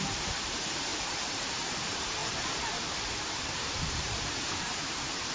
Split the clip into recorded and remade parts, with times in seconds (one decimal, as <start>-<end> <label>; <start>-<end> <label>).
0.0-5.3 remade